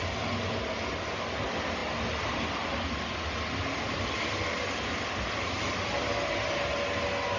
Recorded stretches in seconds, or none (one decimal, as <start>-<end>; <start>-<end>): 0.0-7.4

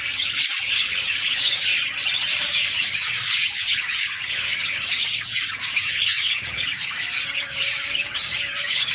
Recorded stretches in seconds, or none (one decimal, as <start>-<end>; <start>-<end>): 1.7-2.5

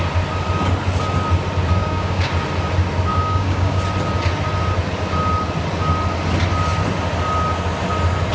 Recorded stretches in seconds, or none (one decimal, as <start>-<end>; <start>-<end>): 0.0-1.8; 2.3-3.1; 3.8-8.3

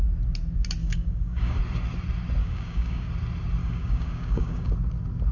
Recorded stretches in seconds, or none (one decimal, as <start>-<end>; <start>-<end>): 0.0-0.8; 1.6-2.4; 3.1-3.6; 4.7-5.3

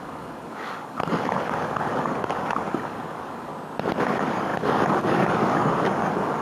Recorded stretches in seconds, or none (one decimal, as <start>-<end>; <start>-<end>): 3.5-4.0

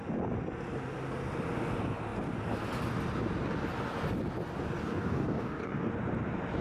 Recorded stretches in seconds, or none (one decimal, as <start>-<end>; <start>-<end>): 0.0-4.8; 5.9-6.6

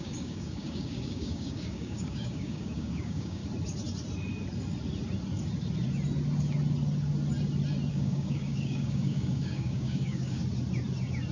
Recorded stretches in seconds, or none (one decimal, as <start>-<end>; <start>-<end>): 3.4-7.9; 10.4-11.3